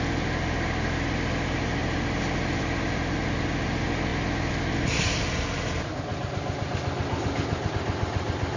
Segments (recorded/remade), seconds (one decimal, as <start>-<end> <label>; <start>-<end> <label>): 0.0-8.6 recorded